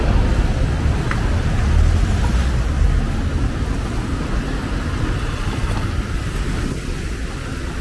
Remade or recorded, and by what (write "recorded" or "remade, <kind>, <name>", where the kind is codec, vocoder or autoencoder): recorded